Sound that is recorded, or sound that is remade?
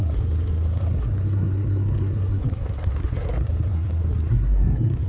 remade